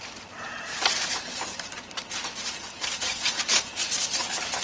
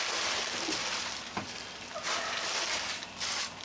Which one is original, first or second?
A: second